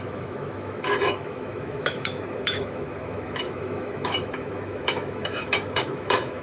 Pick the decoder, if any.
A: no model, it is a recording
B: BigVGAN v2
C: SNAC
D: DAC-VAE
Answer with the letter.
D